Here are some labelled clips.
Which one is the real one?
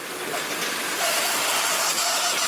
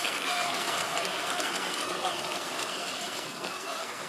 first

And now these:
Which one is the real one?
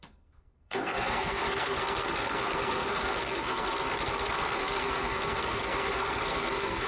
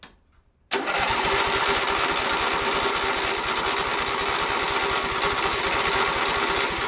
second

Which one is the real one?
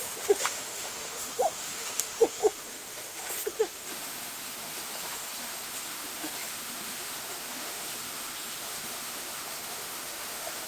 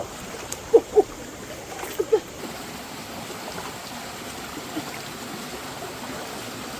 second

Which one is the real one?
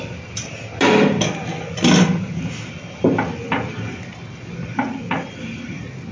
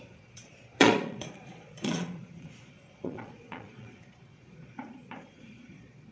first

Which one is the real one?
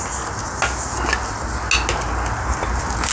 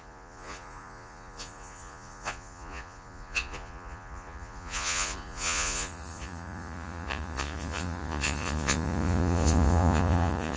first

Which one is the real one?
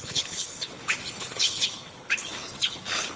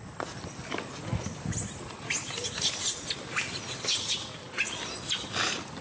second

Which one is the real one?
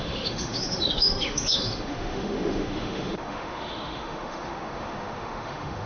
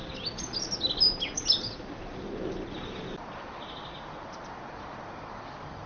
second